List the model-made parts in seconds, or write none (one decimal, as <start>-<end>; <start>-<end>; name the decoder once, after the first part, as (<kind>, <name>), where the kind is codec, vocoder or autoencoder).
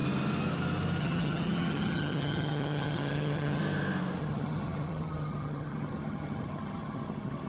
1.0-3.6 (vocoder, HiFi-GAN); 4.2-7.5